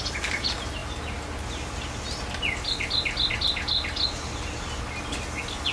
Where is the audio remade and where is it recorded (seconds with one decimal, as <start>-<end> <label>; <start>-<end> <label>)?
0.0-5.7 recorded